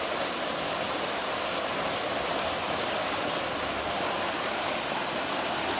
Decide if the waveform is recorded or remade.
remade